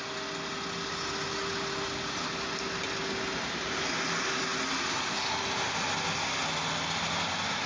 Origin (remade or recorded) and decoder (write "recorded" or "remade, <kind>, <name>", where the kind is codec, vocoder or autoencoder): recorded